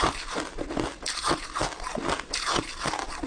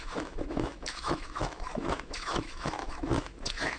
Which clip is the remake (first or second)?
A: second